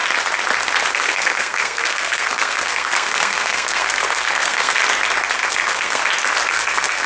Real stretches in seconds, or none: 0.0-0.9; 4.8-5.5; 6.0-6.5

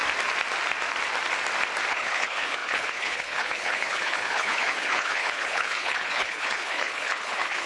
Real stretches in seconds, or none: 0.0-1.9

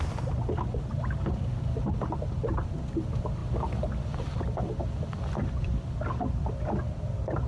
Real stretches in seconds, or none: 0.0-7.5

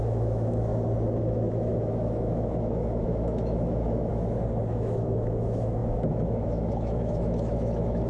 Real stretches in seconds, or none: 0.7-1.2; 4.1-4.7

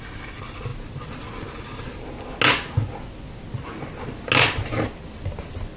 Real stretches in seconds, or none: 0.0-5.8